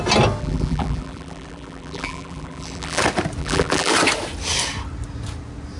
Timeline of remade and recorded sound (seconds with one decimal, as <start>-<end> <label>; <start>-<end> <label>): 0.0-0.4 recorded; 0.4-3.0 remade; 3.0-3.4 recorded; 3.4-3.9 remade; 3.9-5.8 recorded